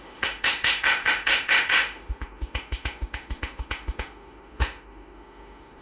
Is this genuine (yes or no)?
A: no